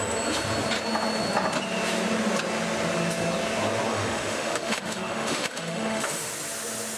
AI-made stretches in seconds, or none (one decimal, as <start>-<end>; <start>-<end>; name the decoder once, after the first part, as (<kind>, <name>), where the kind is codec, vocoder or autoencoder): 3.9-6.3 (autoencoder, DAC-VAE)